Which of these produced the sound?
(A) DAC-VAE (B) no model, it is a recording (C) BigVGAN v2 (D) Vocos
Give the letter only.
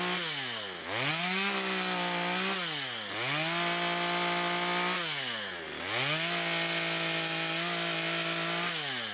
B